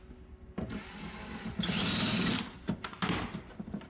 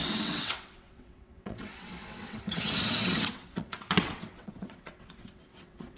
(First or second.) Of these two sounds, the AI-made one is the second